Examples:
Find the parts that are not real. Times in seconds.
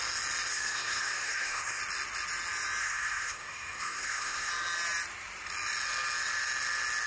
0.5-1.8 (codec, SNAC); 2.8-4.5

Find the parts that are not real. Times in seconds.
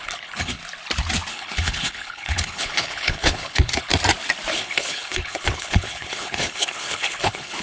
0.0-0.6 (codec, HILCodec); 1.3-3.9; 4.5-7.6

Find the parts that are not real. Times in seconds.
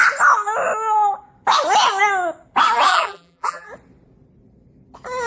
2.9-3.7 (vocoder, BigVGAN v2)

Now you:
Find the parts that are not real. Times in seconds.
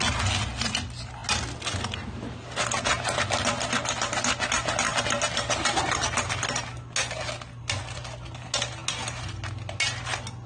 none